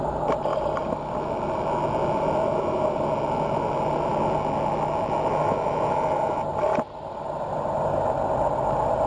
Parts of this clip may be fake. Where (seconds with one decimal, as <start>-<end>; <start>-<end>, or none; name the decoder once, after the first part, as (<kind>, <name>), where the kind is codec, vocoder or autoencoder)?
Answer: none